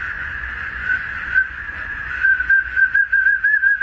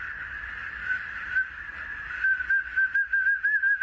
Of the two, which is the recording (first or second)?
second